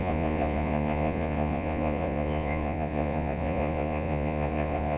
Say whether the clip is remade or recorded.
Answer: remade